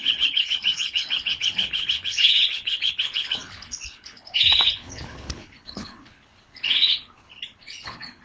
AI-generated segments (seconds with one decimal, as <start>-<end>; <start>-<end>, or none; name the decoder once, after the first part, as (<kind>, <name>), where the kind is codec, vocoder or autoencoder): 0.0-8.2 (codec, HILCodec)